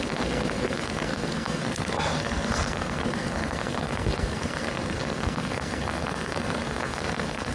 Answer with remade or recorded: remade